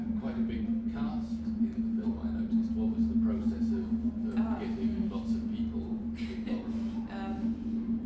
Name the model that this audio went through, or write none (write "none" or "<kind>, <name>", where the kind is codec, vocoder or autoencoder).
none